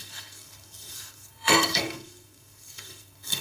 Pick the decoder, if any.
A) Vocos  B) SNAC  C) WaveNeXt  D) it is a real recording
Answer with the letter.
B